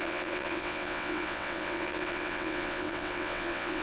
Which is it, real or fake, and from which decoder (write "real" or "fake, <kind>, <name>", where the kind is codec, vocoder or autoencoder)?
fake, vocoder, WaveNeXt